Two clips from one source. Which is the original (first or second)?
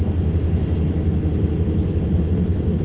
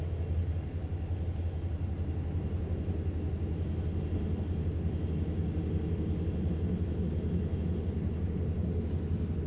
second